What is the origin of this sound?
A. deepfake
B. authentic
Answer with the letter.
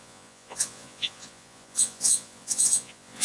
A